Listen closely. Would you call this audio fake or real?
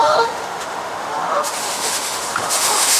fake